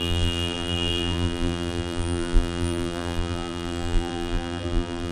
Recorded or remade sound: remade